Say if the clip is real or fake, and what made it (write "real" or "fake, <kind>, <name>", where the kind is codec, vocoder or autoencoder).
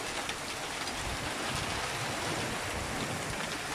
real